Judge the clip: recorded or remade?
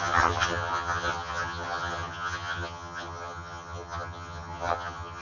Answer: remade